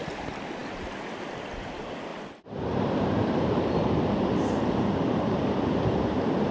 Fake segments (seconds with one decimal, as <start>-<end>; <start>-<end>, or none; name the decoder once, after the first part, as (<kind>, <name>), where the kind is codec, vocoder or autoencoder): 2.1-4.1 (vocoder, BigVGAN v2)